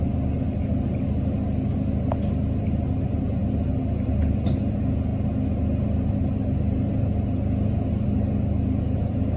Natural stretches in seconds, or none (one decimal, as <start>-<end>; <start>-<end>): 0.0-9.4